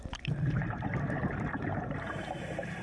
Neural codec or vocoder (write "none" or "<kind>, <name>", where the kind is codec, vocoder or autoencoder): vocoder, BigVGAN v2